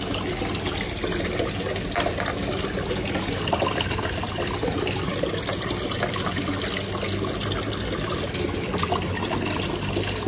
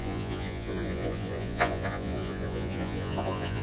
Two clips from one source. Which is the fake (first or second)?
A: second